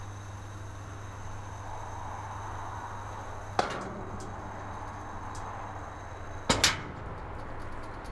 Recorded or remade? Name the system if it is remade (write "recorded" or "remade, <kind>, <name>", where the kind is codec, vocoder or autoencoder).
recorded